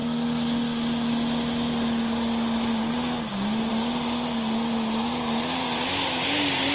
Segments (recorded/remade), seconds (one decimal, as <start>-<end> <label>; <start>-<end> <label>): 0.0-6.7 recorded